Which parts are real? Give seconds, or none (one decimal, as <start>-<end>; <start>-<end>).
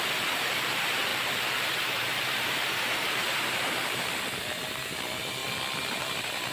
1.1-1.6; 5.4-5.9